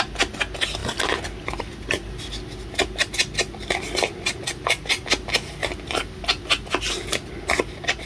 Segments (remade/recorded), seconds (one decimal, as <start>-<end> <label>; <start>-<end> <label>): 0.0-8.1 recorded

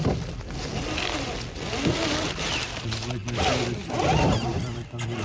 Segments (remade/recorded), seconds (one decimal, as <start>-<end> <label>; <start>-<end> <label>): 0.0-5.2 recorded

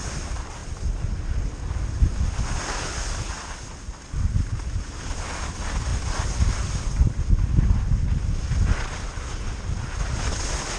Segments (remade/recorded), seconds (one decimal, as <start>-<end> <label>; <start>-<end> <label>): 0.0-10.8 recorded

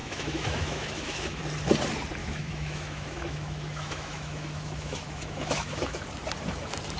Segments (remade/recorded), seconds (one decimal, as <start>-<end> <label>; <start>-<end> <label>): 0.0-1.4 remade; 1.4-2.2 recorded; 2.2-6.0 remade; 6.0-7.0 recorded

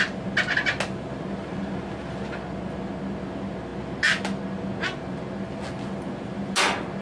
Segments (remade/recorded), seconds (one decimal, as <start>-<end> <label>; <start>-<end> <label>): 0.0-7.0 recorded

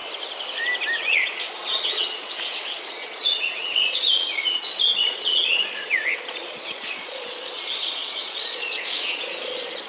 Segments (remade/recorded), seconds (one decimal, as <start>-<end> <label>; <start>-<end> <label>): 0.0-1.0 recorded; 1.0-9.9 remade

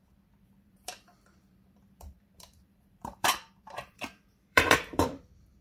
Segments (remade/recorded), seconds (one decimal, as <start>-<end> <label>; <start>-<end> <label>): 0.0-5.6 remade

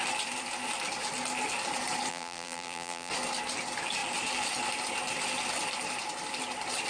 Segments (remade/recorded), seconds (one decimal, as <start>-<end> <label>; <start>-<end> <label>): 0.0-2.1 recorded; 2.1-3.1 remade; 3.1-6.9 recorded